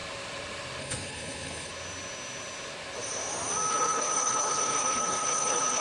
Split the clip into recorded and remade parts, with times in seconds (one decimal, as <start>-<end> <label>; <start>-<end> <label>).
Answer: 0.0-0.8 recorded; 0.8-1.7 remade; 1.7-3.7 recorded; 3.7-5.8 remade

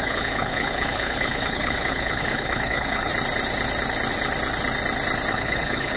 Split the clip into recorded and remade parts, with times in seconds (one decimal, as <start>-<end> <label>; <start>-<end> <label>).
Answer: 0.0-3.1 remade; 3.1-5.3 recorded; 5.3-6.0 remade

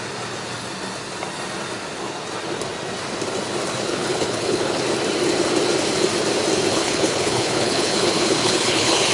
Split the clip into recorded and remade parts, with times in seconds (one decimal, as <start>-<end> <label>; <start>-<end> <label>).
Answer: 0.0-3.9 recorded; 3.9-4.8 remade; 4.8-6.7 recorded; 6.7-9.1 remade

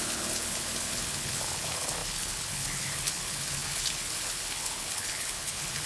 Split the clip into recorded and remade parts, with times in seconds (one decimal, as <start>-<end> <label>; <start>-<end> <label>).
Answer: 0.0-5.9 remade

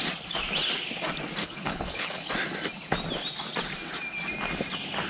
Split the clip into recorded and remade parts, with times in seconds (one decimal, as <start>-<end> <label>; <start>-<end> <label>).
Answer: 0.0-1.4 recorded; 1.4-2.3 remade; 2.3-5.1 recorded

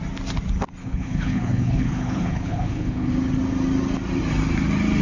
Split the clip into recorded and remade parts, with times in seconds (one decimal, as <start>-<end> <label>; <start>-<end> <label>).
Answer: 0.0-0.8 recorded; 0.8-3.1 remade; 3.1-5.0 recorded

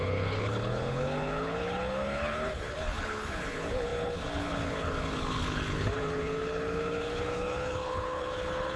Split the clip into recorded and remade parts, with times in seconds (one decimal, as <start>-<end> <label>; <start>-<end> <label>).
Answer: 0.0-8.8 remade